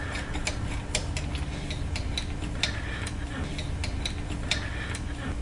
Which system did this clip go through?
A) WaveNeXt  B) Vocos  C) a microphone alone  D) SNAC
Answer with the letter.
C